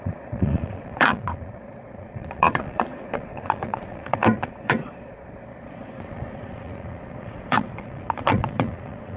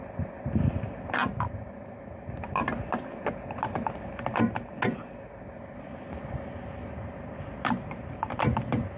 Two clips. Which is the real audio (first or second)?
second